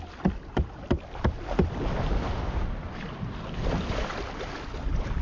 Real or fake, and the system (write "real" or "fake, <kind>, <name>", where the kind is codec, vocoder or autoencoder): real